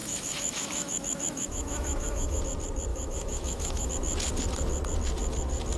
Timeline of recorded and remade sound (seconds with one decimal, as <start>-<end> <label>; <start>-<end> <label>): 0.0-2.4 remade; 2.4-2.9 recorded; 2.9-3.9 remade; 3.9-5.8 recorded